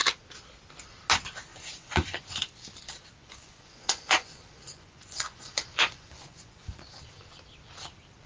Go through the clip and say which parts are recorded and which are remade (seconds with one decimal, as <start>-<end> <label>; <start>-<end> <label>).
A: 0.0-1.5 recorded; 1.5-2.2 remade; 2.2-3.2 recorded; 3.2-7.0 remade; 7.0-8.3 recorded